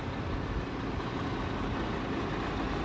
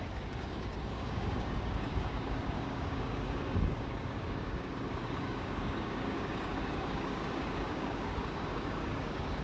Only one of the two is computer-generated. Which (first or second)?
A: second